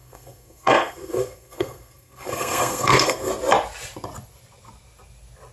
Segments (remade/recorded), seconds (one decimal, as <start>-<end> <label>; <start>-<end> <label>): 0.0-3.3 remade; 3.3-5.5 recorded